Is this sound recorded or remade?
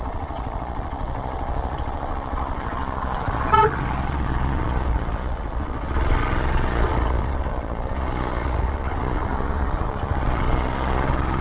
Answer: remade